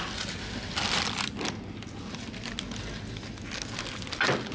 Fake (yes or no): no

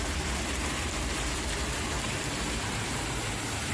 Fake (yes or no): no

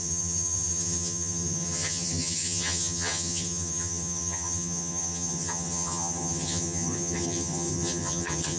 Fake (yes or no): yes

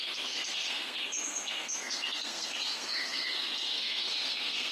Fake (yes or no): yes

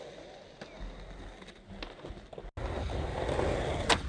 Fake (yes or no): no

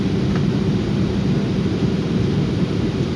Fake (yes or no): no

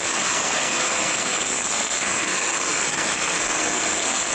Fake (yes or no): yes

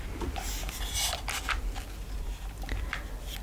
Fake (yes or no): no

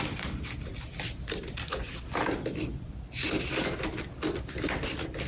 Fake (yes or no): no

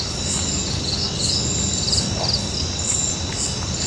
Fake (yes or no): no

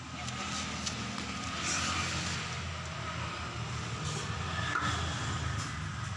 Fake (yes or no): no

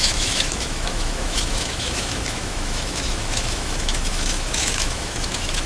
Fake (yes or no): yes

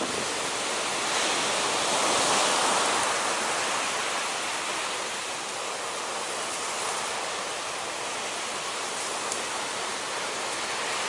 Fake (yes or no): no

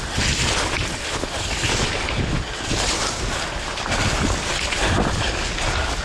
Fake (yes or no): no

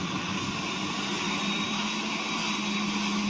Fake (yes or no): no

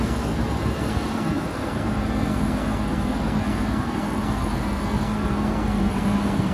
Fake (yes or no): yes